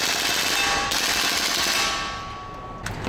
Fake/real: real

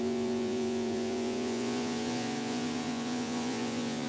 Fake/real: fake